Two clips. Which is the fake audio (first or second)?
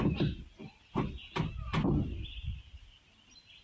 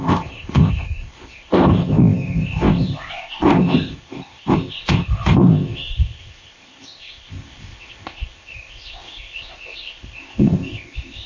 second